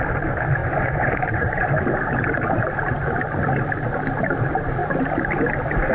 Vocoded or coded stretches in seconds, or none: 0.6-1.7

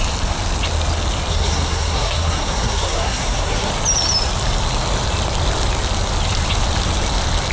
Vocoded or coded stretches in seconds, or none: 1.3-3.7

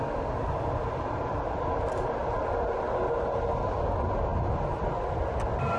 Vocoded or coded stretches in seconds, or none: none

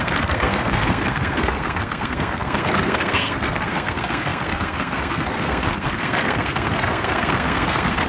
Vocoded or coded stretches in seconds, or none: 0.0-8.1

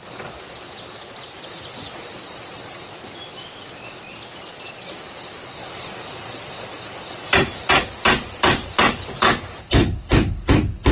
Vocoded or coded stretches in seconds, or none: 5.6-7.7